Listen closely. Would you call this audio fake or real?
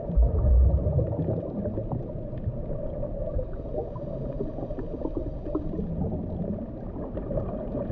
real